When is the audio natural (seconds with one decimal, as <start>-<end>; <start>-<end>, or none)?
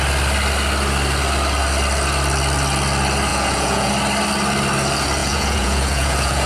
0.0-3.3; 3.9-5.2